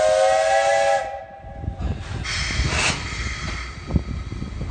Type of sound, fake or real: real